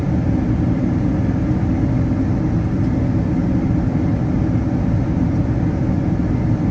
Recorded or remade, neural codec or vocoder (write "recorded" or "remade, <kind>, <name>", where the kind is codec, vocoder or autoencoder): recorded